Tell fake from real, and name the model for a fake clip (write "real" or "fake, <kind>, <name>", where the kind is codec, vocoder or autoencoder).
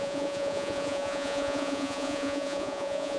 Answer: fake, vocoder, Vocos